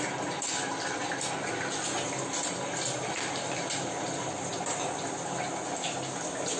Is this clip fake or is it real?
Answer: real